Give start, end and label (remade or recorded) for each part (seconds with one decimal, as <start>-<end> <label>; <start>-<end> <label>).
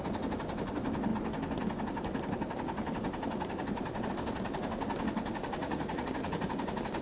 0.0-5.6 recorded; 5.6-6.1 remade; 6.1-7.0 recorded